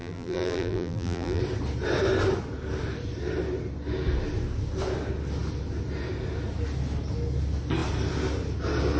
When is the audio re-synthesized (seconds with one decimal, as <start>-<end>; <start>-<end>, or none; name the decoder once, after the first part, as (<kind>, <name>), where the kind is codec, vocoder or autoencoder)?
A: 0.0-1.4 (vocoder, BigVGAN v2)